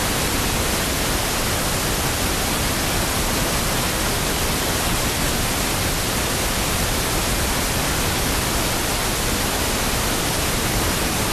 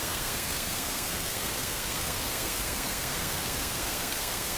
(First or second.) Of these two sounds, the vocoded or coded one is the second